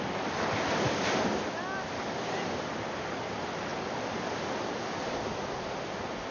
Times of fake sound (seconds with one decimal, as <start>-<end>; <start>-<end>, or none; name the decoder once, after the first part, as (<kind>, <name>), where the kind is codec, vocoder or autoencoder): none